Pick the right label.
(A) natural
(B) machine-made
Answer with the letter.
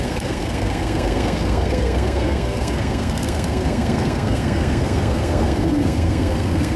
B